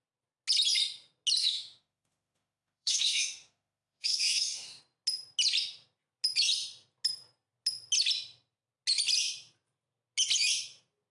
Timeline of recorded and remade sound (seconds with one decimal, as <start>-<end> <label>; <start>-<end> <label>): 0.0-1.4 recorded; 1.4-4.8 remade; 4.8-11.1 recorded